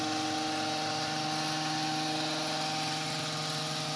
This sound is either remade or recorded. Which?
recorded